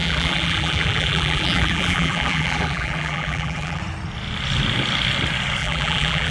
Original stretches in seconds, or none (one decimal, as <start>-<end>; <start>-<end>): 3.8-5.6